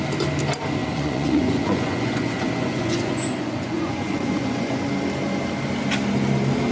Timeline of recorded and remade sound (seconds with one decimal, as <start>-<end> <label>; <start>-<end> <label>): 0.0-0.8 recorded; 0.8-4.8 remade; 4.8-6.7 recorded